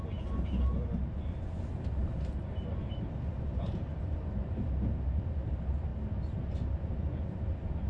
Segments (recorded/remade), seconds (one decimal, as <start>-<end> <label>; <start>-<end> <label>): 0.0-2.0 recorded; 2.0-4.4 remade; 4.4-7.9 recorded